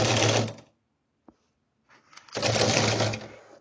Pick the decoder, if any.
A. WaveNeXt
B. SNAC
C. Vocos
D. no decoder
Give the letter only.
D